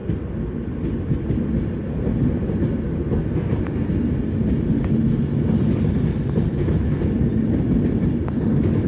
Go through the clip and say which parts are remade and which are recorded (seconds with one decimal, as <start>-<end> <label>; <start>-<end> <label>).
0.0-8.9 recorded